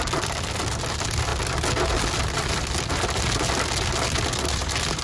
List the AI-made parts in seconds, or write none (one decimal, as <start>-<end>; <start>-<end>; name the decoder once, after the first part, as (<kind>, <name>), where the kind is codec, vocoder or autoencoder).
none